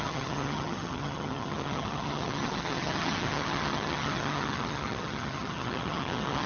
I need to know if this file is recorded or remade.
remade